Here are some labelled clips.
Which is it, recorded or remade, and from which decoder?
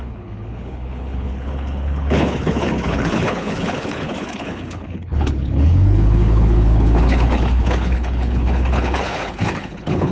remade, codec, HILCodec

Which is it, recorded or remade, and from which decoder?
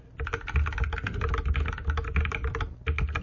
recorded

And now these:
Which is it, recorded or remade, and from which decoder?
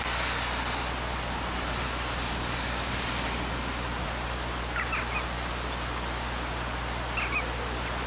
recorded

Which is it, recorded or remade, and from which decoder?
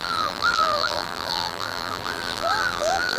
remade, vocoder, BigVGAN v2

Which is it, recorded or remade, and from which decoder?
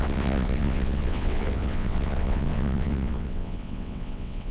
remade, vocoder, WaveNeXt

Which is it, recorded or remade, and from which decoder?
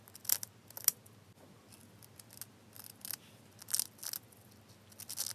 recorded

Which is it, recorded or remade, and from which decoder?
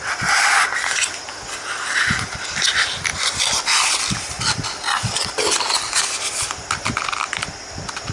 recorded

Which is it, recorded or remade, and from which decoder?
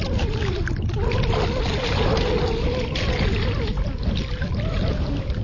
recorded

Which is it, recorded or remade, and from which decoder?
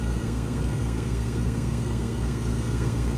remade, codec, SNAC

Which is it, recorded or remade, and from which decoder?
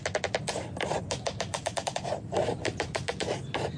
recorded